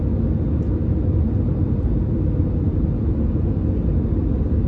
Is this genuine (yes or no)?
yes